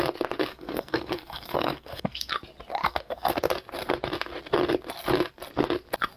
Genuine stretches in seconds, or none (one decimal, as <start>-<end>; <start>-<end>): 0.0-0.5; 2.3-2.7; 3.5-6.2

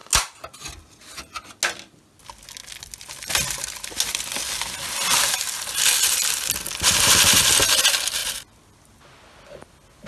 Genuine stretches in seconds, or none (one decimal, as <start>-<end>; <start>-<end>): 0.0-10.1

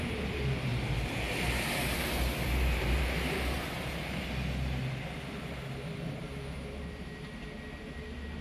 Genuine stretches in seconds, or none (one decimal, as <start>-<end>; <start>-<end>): 0.0-0.7; 4.2-8.4